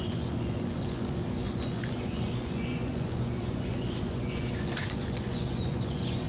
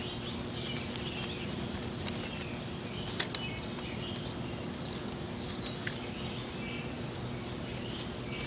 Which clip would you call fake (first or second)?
first